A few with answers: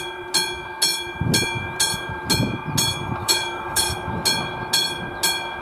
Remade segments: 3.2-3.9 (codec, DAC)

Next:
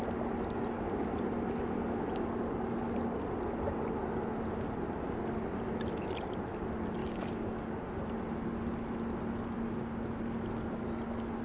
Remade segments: 7.0-7.7 (codec, DAC)